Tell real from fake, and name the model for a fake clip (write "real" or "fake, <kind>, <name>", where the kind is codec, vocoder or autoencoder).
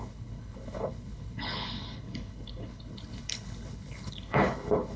fake, codec, HILCodec